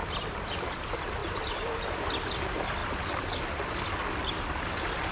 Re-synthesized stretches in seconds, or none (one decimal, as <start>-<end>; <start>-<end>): none